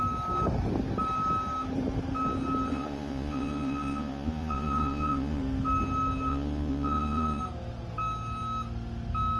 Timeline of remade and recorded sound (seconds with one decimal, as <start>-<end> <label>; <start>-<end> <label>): 0.0-2.7 recorded; 2.7-5.4 remade; 5.4-6.3 recorded; 6.3-7.4 remade; 7.4-9.4 recorded